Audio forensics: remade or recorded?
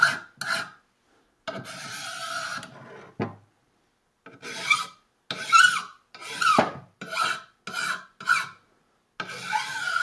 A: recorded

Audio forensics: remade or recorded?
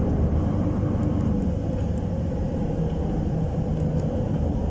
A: recorded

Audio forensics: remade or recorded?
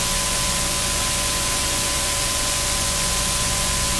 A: remade